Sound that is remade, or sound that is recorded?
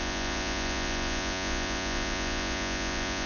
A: remade